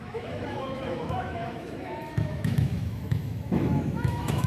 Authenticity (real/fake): fake